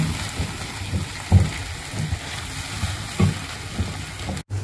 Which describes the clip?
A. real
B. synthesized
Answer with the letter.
A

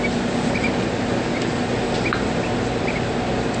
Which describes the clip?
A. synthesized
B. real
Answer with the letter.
B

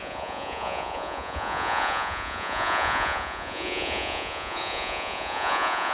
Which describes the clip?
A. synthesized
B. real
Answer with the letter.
A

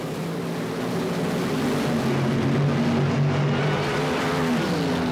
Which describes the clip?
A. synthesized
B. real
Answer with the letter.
B